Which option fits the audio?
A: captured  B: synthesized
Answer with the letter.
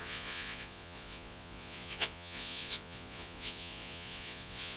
B